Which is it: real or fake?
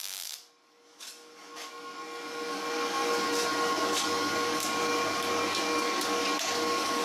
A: fake